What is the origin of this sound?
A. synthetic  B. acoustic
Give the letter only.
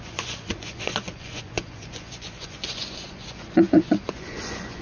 A